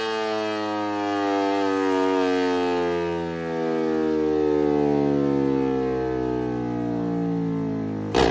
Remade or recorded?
recorded